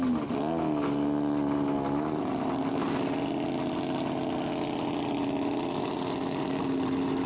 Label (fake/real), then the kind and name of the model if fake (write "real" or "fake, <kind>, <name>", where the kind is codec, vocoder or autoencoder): real